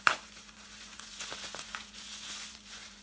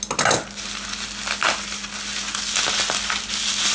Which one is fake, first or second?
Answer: first